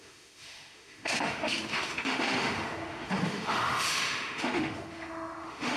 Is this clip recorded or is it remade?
remade